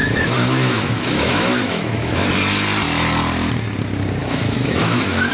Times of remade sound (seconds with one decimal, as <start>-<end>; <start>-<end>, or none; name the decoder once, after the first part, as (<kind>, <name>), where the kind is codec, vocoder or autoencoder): 0.0-2.3 (autoencoder, DAC-VAE); 4.2-5.3